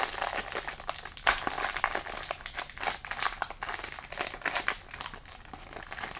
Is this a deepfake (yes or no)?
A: no